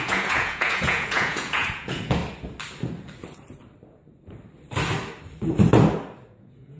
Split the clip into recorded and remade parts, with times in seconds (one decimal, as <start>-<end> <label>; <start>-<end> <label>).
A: 0.0-2.2 remade; 2.2-6.3 recorded; 6.3-6.8 remade